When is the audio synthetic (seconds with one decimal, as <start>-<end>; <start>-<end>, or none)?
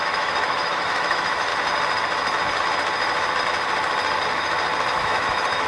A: 0.0-1.5; 4.9-5.7